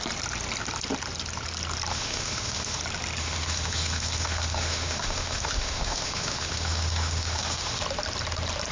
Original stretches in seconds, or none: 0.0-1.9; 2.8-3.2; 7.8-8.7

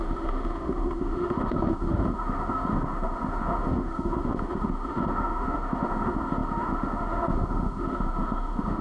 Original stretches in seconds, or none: none

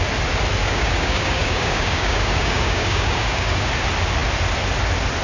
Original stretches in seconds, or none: 0.0-0.6; 3.7-5.2